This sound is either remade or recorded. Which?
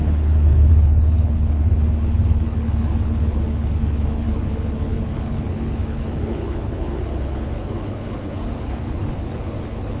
remade